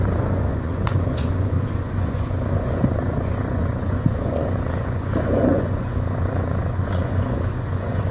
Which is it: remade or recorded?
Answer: remade